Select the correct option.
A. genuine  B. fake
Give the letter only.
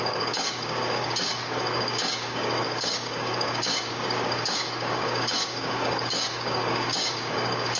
B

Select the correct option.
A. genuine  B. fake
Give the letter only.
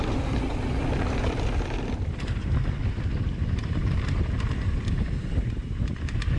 A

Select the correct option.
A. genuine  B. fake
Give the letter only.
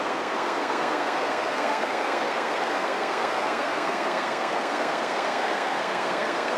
B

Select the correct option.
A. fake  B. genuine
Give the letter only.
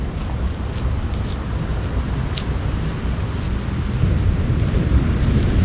B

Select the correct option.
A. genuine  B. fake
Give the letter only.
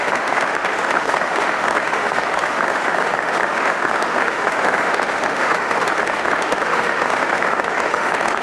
B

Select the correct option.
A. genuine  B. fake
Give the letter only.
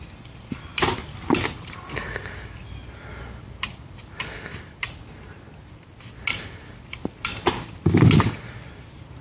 A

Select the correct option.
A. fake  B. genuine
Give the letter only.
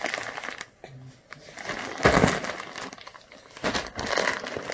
B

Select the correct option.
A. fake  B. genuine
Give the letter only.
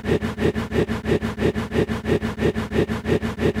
A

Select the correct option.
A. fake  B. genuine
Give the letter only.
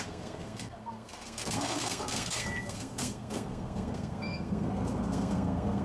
A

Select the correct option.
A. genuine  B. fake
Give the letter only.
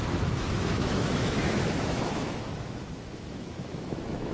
B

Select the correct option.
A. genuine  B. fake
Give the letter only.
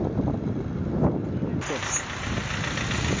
A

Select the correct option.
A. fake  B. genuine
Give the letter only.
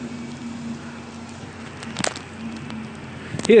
B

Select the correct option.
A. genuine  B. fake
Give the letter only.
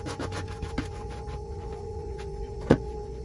B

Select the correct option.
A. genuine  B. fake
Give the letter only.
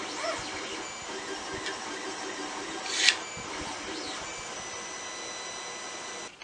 A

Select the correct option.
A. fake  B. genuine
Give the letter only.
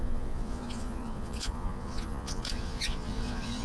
A